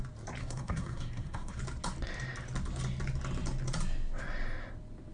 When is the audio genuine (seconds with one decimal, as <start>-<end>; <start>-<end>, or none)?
0.0-0.4; 1.6-5.1